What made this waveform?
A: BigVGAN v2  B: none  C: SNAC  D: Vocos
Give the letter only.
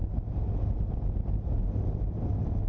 B